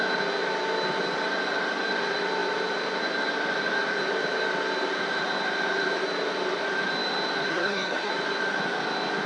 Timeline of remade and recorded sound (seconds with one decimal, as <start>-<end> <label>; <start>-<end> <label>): 0.0-7.5 recorded; 7.5-8.1 remade; 8.1-9.3 recorded